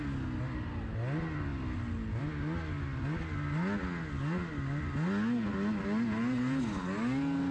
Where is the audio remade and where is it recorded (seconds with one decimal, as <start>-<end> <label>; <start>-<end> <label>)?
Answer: 0.0-7.5 recorded